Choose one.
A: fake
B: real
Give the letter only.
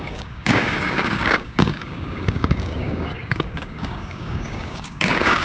A